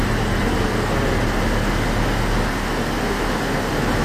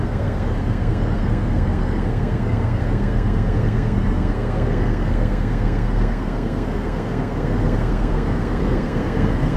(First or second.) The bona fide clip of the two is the first